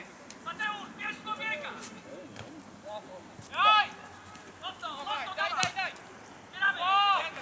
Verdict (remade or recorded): recorded